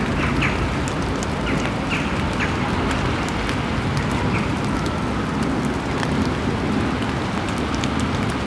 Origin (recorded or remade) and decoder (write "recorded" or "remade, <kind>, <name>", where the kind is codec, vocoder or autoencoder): recorded